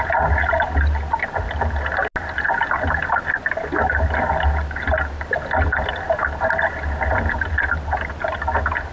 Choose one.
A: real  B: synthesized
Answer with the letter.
A